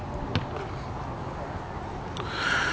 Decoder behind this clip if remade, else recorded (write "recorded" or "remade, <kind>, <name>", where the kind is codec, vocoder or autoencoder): recorded